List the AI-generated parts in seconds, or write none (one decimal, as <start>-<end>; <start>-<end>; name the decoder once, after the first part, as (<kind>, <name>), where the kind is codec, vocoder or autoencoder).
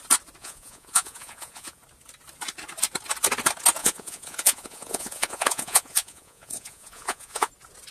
0.4-1.8 (vocoder, Vocos); 3.8-7.5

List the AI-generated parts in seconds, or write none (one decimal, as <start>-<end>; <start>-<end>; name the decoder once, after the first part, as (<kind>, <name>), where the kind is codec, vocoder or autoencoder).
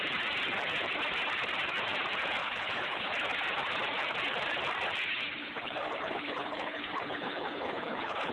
2.4-3.1 (codec, HILCodec); 5.4-8.3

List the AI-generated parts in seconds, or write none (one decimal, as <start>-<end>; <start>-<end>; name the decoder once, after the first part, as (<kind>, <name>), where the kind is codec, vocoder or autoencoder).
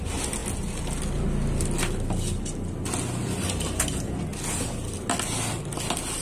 none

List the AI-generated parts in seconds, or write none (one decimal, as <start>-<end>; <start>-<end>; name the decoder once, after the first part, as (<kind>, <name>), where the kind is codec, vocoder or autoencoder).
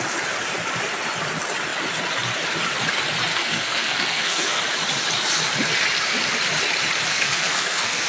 3.3-4.6 (codec, SNAC); 7.1-8.1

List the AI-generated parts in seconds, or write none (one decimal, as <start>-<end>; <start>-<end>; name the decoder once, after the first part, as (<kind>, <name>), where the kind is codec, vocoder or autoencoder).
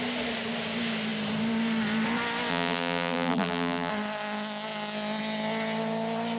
2.5-3.9 (vocoder, BigVGAN v2)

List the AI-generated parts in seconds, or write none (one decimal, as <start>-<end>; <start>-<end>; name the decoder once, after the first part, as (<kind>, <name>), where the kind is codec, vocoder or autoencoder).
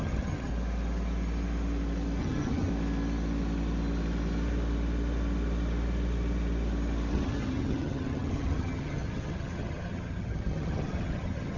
0.0-0.5 (vocoder, HiFi-GAN); 2.2-2.7; 7.1-11.6